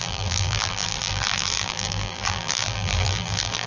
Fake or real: fake